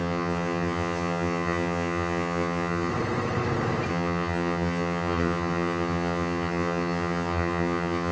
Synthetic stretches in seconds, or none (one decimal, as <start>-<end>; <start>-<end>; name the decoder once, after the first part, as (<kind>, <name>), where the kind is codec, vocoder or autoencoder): 0.0-2.9 (vocoder, HiFi-GAN); 3.9-8.1